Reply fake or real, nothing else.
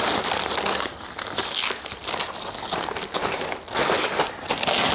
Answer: real